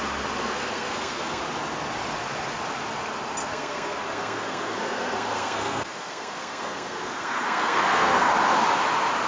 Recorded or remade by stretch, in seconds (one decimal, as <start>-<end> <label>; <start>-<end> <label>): 0.0-0.4 recorded; 0.4-1.4 remade; 1.4-3.4 recorded; 3.4-8.3 remade; 8.3-9.3 recorded